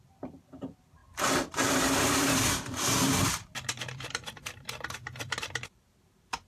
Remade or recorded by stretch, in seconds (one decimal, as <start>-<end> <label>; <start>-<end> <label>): 0.0-6.5 remade